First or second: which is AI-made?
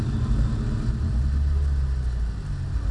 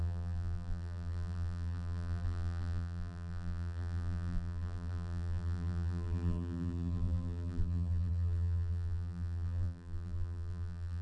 second